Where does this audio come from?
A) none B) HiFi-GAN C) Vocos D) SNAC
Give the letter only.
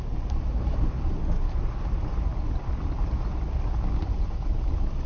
A